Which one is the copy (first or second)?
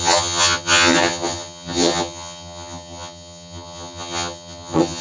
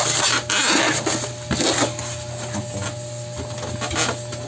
first